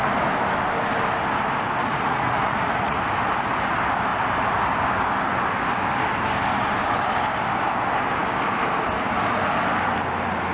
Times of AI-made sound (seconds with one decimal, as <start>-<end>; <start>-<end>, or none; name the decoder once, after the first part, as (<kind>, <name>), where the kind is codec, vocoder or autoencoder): 1.8-3.0 (vocoder, Vocos)